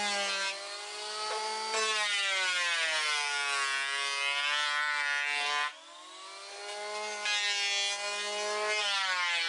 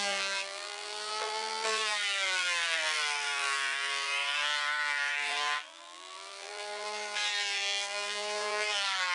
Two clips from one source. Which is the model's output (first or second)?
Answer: second